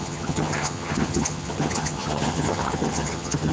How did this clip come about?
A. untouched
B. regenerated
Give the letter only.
B